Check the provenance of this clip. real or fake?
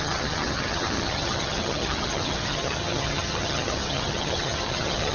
fake